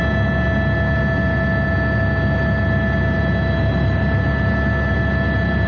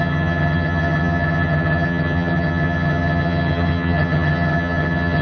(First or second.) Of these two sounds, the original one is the first